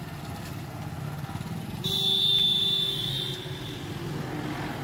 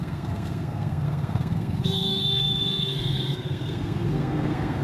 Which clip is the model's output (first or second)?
second